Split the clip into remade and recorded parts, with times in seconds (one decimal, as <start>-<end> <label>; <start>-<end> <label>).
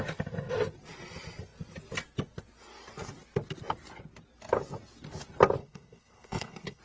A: 0.0-5.6 recorded; 5.6-6.8 remade